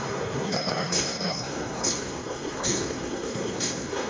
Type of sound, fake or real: fake